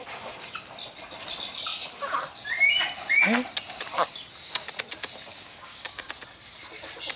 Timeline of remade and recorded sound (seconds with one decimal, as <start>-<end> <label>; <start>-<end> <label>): 0.0-5.3 recorded; 5.3-6.1 remade; 6.1-7.2 recorded